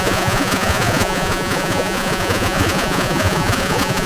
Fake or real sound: fake